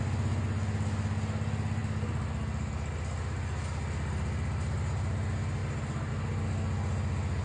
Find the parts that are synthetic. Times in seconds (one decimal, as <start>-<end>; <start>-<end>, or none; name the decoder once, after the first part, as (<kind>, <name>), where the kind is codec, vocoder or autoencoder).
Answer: none